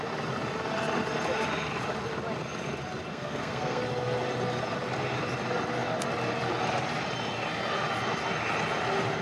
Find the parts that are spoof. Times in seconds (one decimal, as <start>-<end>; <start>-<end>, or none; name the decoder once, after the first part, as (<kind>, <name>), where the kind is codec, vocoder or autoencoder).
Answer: 3.1-3.8 (codec, SNAC)